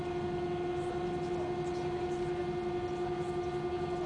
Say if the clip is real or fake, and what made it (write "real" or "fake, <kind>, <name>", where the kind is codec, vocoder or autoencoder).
real